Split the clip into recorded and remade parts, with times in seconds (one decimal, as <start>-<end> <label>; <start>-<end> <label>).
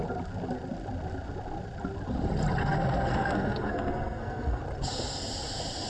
0.0-2.6 recorded; 2.6-4.6 remade; 4.6-5.9 recorded